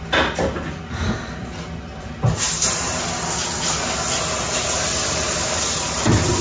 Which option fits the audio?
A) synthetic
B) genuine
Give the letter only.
B